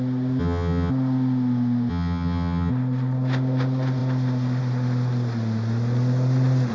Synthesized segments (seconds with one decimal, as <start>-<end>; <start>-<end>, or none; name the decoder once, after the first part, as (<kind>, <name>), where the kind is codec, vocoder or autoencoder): 0.4-0.9 (vocoder, HiFi-GAN); 1.9-2.7